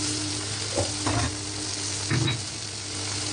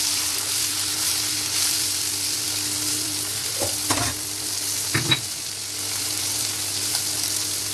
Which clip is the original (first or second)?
first